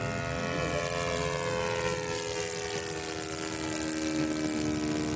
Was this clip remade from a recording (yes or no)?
no